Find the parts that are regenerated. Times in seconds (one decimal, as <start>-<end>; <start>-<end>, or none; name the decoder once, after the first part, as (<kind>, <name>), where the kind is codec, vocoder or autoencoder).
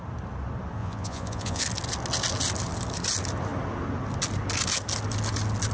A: 0.8-1.6 (vocoder, Vocos)